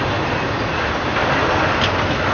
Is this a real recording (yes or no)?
yes